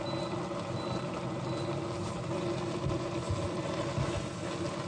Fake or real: real